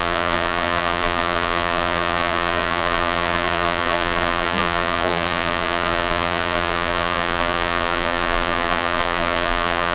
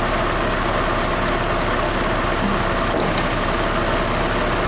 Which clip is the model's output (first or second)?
first